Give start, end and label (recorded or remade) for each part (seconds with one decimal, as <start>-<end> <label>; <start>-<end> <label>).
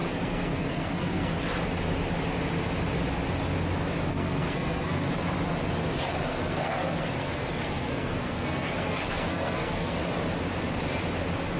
0.0-1.3 remade; 1.3-4.1 recorded; 4.1-5.1 remade; 5.1-6.1 recorded; 6.1-10.0 remade; 10.0-11.6 recorded